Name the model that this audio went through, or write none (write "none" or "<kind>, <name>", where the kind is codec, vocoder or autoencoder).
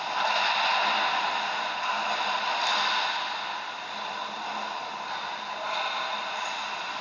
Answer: none